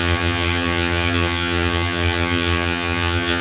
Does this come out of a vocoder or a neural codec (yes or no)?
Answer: yes